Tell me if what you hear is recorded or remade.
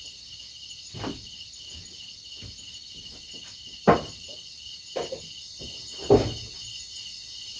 recorded